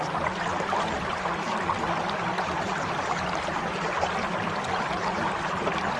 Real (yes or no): yes